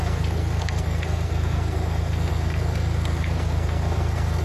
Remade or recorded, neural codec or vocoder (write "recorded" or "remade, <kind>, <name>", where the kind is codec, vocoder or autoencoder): remade, codec, SNAC